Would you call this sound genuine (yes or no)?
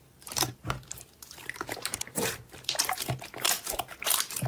no